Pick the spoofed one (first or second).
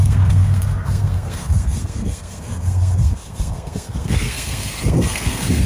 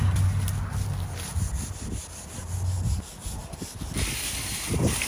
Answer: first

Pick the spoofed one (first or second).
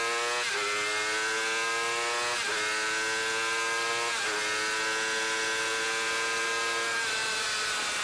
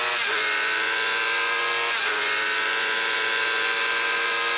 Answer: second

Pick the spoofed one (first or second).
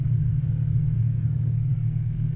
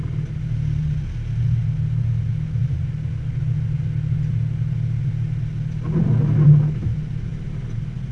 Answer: first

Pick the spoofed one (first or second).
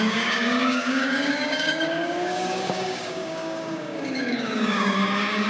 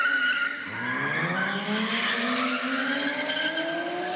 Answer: first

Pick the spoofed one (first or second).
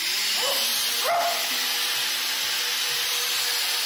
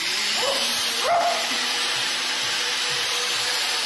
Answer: second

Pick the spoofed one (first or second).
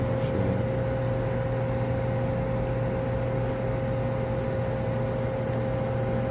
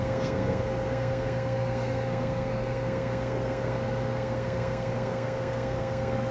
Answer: second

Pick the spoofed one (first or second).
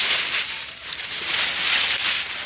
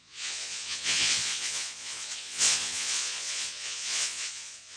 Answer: second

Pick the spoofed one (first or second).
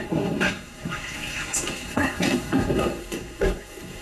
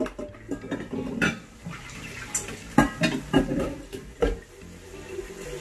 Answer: first